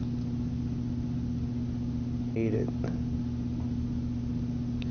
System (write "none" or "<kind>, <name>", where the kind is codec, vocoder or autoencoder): none